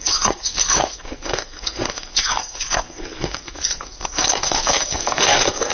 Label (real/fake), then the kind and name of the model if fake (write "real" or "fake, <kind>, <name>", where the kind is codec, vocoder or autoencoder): fake, codec, SNAC